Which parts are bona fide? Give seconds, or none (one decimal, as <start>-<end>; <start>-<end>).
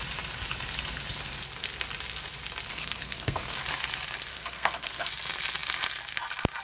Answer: 0.0-2.7; 3.6-4.3; 5.1-6.6